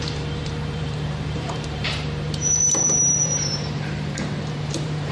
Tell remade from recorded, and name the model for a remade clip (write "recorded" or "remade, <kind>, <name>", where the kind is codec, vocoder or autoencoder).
remade, vocoder, BigVGAN v2